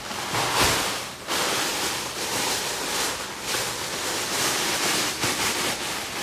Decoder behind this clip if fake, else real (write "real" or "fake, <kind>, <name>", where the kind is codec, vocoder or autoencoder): real